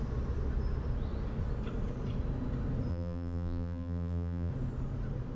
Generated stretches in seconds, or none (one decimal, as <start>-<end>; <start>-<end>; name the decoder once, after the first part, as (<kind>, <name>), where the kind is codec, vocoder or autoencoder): 2.9-4.5 (vocoder, BigVGAN v2)